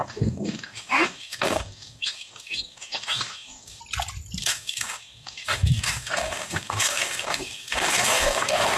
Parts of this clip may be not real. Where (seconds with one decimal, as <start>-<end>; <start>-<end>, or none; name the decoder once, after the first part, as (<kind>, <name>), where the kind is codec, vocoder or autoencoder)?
0.0-3.8 (codec, DAC); 4.4-8.8